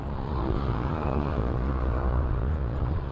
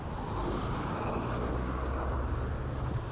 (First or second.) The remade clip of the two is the first